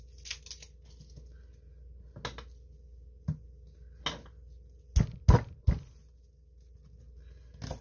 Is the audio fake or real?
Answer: real